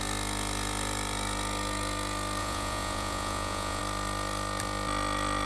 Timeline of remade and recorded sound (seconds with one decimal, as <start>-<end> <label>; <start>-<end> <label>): 0.0-2.4 recorded; 2.4-3.8 remade; 3.8-5.5 recorded